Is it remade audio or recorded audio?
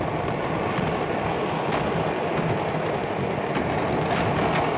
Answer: recorded